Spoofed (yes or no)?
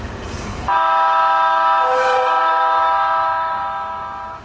yes